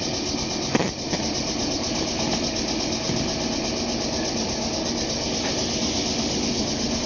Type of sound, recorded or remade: recorded